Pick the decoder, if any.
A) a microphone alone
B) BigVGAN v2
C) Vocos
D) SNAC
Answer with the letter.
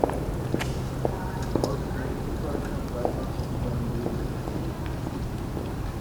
A